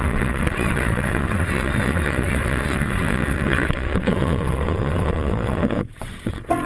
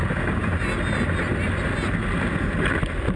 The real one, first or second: second